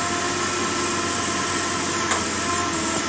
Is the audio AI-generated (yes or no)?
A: no